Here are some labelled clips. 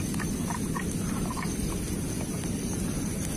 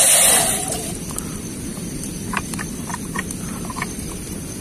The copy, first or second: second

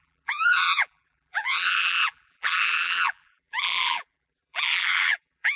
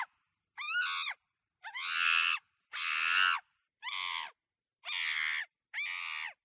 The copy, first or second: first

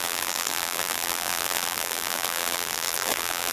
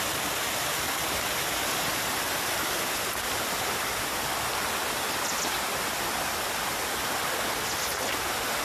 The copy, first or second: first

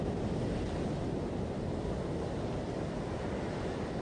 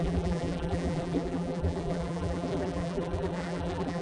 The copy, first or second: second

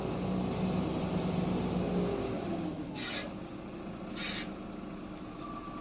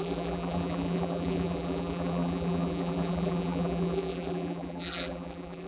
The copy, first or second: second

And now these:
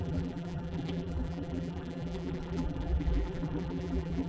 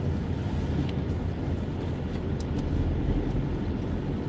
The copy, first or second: first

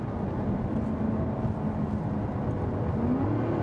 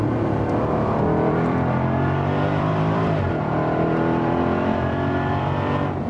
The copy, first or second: second